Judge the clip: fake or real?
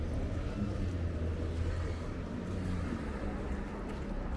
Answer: real